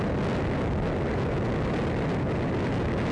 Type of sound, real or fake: real